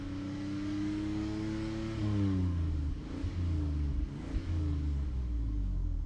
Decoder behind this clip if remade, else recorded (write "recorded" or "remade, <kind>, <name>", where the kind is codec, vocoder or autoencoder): remade, codec, DAC